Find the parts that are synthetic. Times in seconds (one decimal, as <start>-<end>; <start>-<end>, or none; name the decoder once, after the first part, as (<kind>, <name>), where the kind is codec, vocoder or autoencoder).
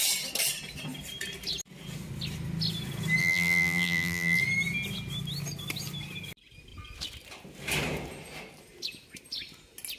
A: 3.2-4.4 (vocoder, BigVGAN v2)